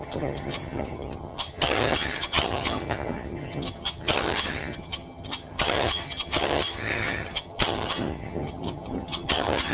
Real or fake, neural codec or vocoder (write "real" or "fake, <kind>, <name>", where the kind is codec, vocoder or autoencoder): fake, vocoder, HiFi-GAN